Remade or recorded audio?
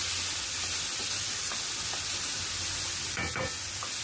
recorded